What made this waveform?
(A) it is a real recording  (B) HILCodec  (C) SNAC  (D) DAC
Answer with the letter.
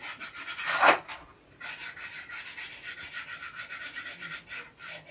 A